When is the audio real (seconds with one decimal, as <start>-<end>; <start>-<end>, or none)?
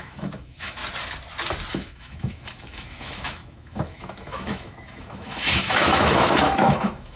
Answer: 0.8-1.7